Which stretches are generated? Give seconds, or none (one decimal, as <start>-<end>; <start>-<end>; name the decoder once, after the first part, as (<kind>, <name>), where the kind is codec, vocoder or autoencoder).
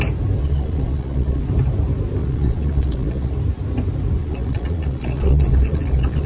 0.4-1.4 (vocoder, Vocos); 2.2-3.3; 4.2-6.3